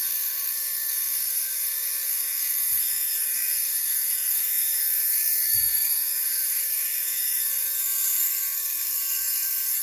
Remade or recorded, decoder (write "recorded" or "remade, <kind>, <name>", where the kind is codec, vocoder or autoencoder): remade, codec, SNAC